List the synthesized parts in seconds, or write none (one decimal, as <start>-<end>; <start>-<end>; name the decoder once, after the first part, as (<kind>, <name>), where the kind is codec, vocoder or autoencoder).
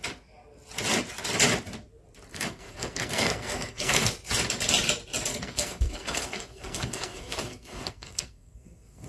2.3-4.1 (codec, SNAC); 5.3-9.1